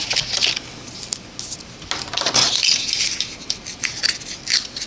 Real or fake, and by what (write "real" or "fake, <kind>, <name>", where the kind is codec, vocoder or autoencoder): real